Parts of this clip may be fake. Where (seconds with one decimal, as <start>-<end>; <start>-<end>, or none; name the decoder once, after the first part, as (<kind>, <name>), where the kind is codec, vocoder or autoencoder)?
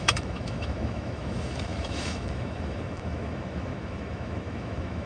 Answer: 0.0-5.1 (autoencoder, DAC-VAE)